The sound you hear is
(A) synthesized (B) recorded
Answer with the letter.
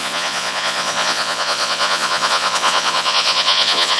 A